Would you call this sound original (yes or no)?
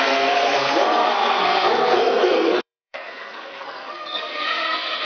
no